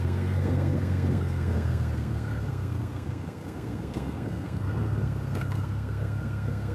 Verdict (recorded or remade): remade